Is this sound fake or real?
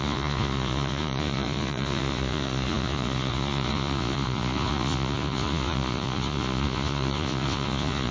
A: fake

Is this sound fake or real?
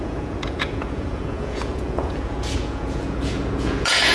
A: fake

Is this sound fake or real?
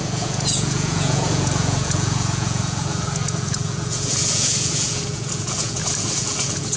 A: fake